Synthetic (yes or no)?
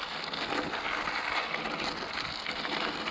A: no